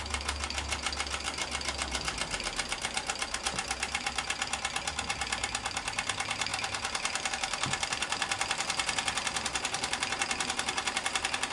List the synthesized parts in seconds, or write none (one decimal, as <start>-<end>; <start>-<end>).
none